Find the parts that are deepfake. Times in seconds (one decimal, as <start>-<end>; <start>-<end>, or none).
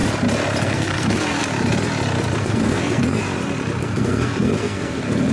0.6-1.4; 2.4-3.2; 3.8-5.3